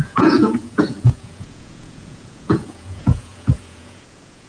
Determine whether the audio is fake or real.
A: fake